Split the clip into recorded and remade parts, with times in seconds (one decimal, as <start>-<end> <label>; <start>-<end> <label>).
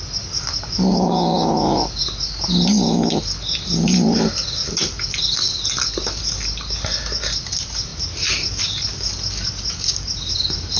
0.0-0.9 recorded; 0.9-1.5 remade; 1.5-10.8 recorded